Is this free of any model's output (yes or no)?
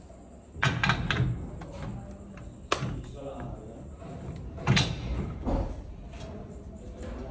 yes